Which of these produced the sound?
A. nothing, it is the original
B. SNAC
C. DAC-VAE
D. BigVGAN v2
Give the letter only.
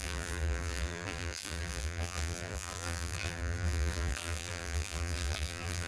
D